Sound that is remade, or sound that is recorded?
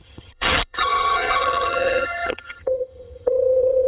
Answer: remade